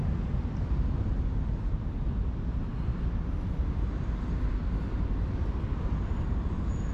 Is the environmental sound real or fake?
real